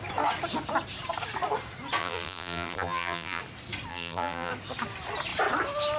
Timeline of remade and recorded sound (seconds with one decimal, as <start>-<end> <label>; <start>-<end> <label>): 0.0-2.0 recorded; 2.0-3.4 remade; 3.4-3.9 recorded; 3.9-4.5 remade; 4.5-6.0 recorded